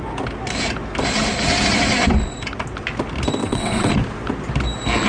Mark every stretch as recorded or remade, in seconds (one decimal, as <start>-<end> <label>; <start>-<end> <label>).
0.0-3.4 recorded; 3.4-3.9 remade; 3.9-5.1 recorded